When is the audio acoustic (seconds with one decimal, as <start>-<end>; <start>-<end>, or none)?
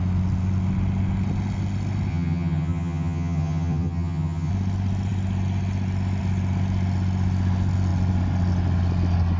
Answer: 0.0-2.1; 4.5-9.4